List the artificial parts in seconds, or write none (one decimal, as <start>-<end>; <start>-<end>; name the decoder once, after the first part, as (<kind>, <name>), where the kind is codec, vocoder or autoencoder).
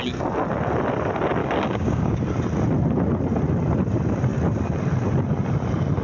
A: 1.4-2.2 (codec, DAC)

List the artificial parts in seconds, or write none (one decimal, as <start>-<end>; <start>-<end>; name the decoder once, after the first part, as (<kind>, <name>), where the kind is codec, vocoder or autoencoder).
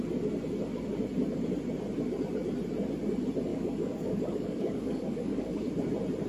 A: 3.5-5.7 (codec, DAC)